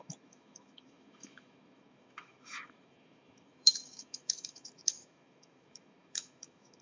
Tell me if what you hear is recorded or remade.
remade